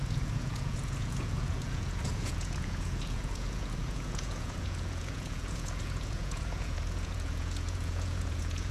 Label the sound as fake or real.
fake